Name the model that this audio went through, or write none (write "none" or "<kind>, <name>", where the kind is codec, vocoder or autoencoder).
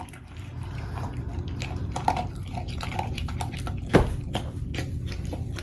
vocoder, BigVGAN v2